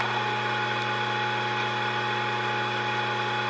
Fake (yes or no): no